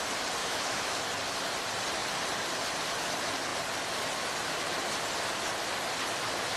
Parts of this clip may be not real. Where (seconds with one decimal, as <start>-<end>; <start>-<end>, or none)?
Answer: 0.4-1.0